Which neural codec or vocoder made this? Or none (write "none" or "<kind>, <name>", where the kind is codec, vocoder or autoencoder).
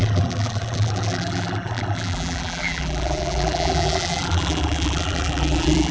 vocoder, BigVGAN v2